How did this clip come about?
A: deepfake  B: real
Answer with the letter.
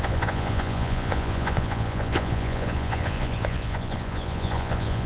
A